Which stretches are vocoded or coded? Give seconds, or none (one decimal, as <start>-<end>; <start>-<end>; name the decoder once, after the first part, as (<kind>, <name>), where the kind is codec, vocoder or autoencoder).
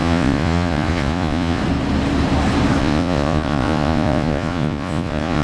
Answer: 0.0-1.6 (vocoder, Vocos); 2.8-5.4